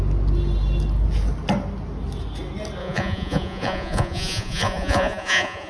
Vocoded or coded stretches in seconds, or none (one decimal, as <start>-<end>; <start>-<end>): 2.8-5.7